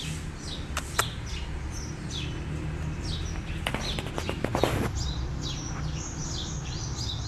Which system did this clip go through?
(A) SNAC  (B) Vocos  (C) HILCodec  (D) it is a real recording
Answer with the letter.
D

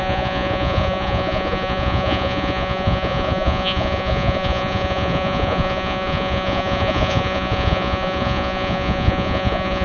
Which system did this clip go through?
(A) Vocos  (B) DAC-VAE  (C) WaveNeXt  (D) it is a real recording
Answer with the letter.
A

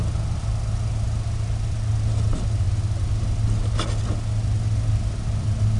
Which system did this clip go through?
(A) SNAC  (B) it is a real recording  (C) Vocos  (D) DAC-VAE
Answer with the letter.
B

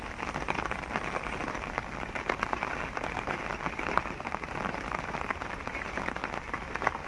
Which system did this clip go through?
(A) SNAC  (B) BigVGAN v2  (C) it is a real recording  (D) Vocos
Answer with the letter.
C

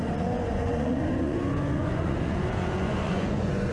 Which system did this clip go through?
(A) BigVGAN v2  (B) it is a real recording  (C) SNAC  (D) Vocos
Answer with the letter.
D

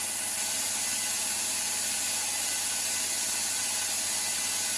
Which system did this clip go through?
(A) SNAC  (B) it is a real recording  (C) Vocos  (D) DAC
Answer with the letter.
B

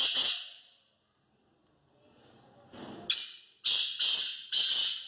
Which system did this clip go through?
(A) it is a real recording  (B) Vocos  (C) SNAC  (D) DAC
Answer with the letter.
A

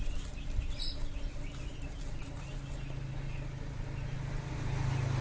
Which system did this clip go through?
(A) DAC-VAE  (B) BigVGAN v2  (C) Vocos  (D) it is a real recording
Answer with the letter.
D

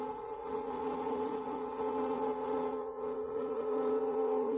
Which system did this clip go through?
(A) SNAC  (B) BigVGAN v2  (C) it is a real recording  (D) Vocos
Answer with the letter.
D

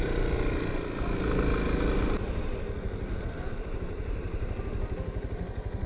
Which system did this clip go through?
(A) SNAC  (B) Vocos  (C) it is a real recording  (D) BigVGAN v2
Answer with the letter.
C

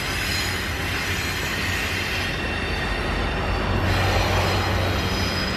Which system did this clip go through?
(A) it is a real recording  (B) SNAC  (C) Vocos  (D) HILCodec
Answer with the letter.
A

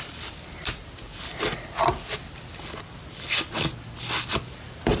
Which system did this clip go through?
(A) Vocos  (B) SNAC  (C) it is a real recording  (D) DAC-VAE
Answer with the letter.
C